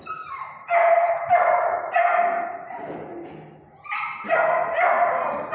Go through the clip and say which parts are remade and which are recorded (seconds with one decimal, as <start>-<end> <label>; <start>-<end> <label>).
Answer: 0.0-2.1 remade; 2.1-2.7 recorded; 2.7-3.1 remade; 3.1-5.1 recorded; 5.1-5.5 remade